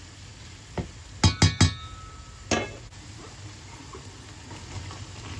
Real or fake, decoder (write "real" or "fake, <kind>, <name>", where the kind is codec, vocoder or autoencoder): real